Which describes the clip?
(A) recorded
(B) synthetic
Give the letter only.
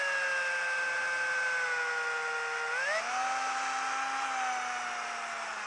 A